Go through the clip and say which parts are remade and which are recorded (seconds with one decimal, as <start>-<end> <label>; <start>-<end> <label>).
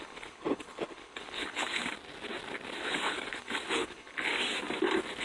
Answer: 0.0-1.8 remade; 1.8-2.8 recorded; 2.8-4.3 remade; 4.3-5.2 recorded